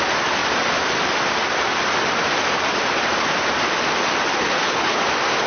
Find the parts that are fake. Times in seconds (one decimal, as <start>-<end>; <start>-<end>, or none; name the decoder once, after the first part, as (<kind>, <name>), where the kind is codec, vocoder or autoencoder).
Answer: 4.3-5.0 (codec, HILCodec)